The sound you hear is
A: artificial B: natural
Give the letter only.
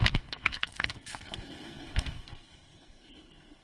A